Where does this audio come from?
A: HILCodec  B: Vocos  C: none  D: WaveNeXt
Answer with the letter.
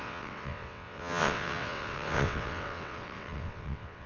D